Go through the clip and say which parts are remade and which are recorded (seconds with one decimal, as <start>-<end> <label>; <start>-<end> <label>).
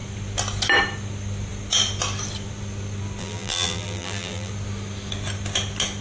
0.0-3.2 recorded; 3.2-4.5 remade; 4.5-6.0 recorded